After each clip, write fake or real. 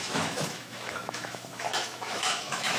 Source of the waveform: fake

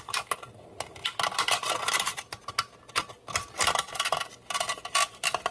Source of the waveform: real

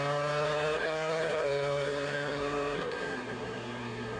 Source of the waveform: fake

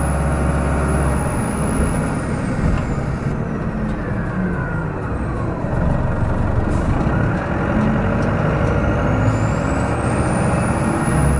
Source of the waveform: real